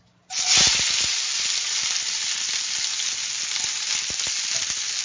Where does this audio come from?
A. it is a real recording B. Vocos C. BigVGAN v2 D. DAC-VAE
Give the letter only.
A